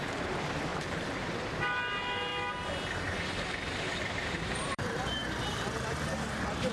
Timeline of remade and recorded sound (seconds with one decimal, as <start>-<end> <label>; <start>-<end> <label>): 0.0-2.3 remade; 2.3-4.0 recorded; 4.0-6.7 remade